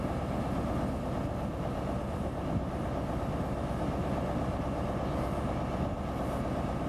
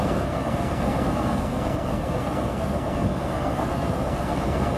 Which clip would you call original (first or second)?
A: first